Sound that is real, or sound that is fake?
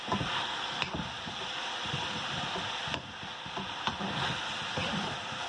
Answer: real